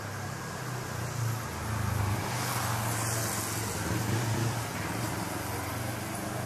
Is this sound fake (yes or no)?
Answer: no